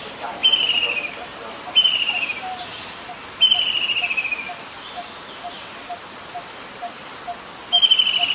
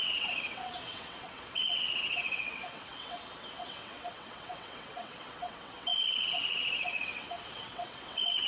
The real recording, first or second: first